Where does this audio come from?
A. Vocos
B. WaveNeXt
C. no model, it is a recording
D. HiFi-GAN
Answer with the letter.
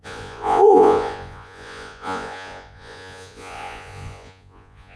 A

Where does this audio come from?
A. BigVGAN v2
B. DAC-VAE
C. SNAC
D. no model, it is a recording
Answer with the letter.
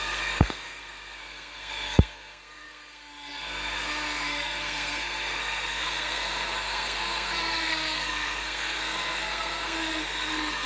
C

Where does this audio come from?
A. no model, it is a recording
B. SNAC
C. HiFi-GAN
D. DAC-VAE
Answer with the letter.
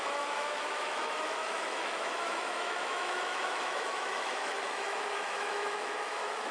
D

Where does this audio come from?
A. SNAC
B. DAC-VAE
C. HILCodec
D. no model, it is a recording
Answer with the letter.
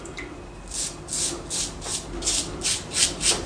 D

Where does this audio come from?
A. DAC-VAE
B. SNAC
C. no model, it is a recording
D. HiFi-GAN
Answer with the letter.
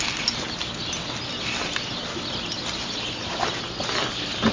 C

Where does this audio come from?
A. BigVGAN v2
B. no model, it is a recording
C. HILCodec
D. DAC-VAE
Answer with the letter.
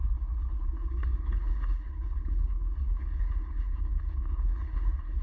C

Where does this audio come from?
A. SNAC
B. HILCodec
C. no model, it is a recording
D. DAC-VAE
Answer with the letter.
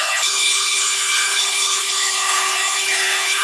B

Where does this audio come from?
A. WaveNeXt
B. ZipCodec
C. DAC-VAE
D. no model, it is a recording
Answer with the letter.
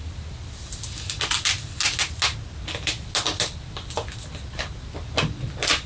D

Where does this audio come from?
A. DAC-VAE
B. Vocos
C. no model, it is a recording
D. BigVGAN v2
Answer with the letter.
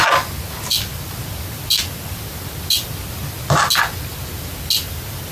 C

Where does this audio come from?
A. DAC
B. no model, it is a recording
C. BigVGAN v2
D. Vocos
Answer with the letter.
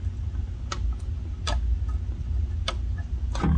B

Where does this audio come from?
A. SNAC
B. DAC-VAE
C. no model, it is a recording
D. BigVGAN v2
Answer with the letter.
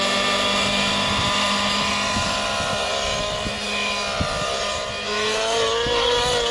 C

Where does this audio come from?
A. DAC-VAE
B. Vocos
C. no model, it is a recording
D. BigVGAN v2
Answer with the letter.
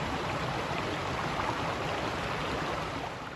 C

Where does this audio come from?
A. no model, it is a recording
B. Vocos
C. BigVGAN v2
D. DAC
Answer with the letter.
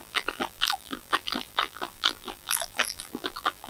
C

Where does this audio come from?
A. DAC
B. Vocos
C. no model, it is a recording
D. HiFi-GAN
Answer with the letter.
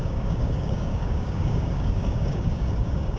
A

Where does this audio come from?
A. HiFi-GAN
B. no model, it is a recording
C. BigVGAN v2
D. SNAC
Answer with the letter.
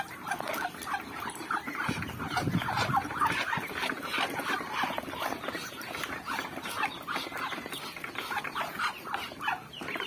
B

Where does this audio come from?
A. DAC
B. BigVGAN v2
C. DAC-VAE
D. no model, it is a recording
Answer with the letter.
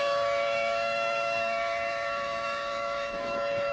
C